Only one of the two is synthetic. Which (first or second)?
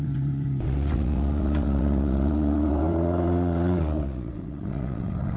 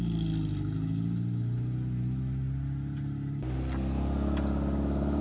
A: first